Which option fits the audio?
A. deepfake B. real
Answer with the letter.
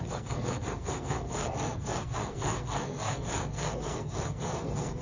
A